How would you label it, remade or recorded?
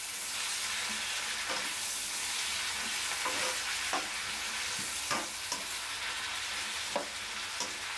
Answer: recorded